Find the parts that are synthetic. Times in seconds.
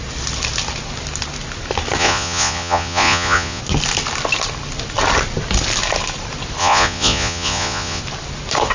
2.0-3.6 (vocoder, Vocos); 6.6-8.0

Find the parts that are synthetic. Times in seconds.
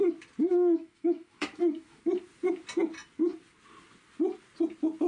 0.5-2.0 (autoencoder, DAC-VAE)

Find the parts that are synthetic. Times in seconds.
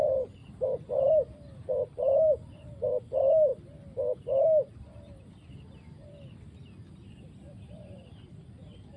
0.4-1.1 (vocoder, BigVGAN v2)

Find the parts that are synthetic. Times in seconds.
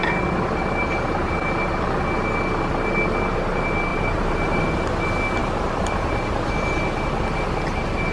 3.9-4.6 (vocoder, BigVGAN v2); 5.4-5.9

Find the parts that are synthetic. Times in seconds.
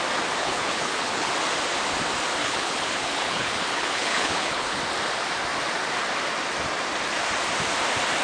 0.4-1.3 (codec, HILCodec); 2.4-4.8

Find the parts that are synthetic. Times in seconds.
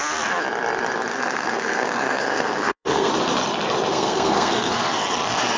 1.1-3.1 (codec, SNAC); 3.9-4.7